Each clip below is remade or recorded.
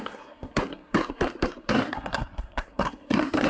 remade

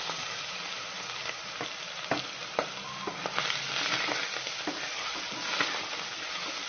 recorded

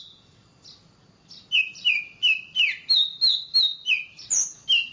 recorded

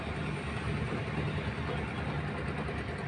recorded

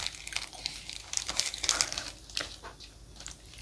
recorded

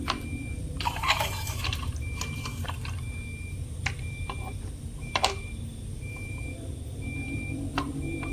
remade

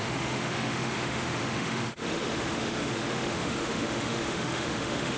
remade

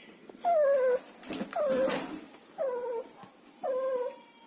recorded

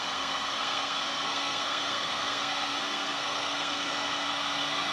remade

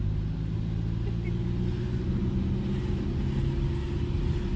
recorded